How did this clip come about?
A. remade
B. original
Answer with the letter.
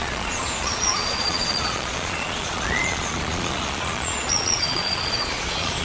A